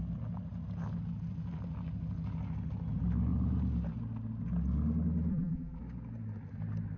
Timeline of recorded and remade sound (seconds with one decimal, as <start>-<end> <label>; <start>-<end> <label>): 0.0-5.3 recorded; 5.3-5.8 remade; 5.8-7.0 recorded